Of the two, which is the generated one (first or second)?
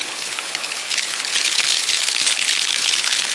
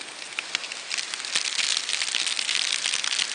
first